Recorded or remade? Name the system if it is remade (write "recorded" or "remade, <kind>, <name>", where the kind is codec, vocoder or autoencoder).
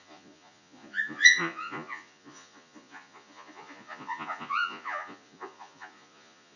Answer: remade, vocoder, Vocos